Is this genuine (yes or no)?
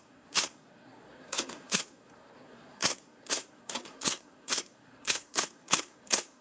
no